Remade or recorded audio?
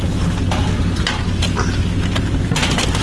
recorded